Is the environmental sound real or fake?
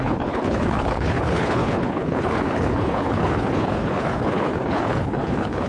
fake